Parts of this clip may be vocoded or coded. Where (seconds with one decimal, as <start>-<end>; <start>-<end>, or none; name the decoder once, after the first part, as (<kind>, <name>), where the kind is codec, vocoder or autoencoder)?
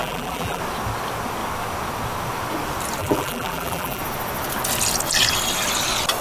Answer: 0.0-0.6 (vocoder, BigVGAN v2); 3.0-4.0